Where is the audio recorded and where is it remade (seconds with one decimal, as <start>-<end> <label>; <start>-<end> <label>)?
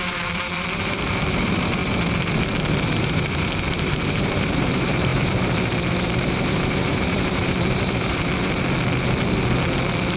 0.0-1.8 remade; 1.8-2.9 recorded; 2.9-8.3 remade; 8.3-10.2 recorded